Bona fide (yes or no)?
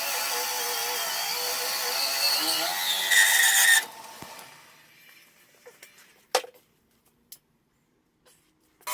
yes